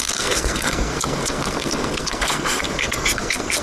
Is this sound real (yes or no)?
no